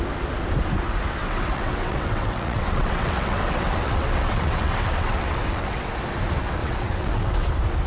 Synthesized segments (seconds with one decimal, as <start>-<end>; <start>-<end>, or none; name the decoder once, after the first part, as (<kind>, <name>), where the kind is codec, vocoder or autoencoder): 1.2-5.9 (vocoder, WaveNeXt); 6.6-7.5